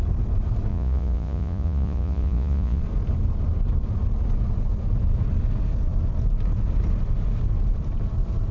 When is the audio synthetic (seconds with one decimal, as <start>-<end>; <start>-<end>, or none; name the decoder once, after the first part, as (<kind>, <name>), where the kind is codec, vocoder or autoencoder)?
0.7-2.8 (vocoder, Vocos)